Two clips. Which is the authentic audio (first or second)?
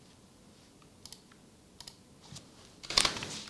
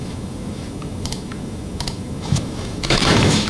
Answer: first